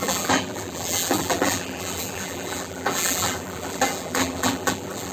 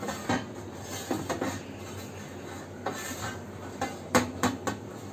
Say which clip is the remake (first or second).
first